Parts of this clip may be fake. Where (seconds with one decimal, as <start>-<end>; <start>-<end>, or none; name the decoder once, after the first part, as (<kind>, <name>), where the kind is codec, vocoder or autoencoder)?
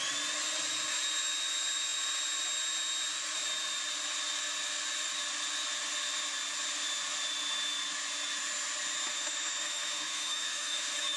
9.1-11.2 (autoencoder, DAC-VAE)